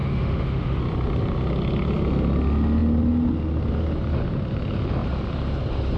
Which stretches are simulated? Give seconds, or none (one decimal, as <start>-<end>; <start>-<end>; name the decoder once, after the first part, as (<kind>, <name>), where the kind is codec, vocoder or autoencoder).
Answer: 0.0-0.8 (autoencoder, DAC-VAE)